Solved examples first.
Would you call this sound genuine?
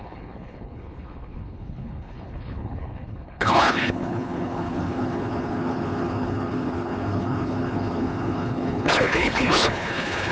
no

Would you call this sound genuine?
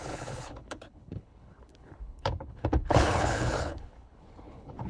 no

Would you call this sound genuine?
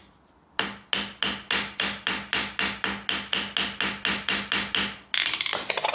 yes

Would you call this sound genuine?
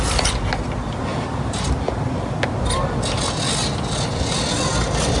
yes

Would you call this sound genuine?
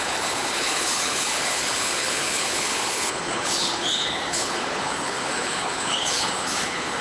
no